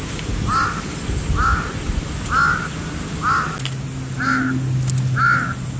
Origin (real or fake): real